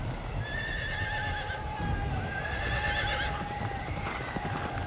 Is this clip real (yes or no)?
yes